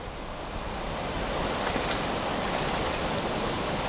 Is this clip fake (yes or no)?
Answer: no